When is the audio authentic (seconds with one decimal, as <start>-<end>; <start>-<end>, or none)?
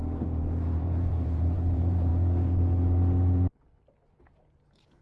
2.1-4.2